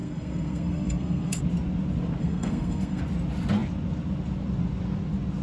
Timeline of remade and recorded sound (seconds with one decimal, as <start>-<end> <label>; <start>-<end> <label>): 0.0-1.4 remade; 1.4-2.2 recorded; 2.2-3.0 remade; 3.0-5.4 recorded